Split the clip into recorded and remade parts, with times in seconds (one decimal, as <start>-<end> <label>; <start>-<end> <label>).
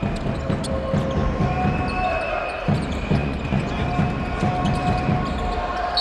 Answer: 0.0-3.2 recorded; 3.2-3.8 remade; 3.8-6.0 recorded